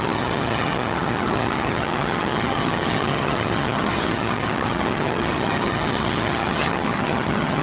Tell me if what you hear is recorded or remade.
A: remade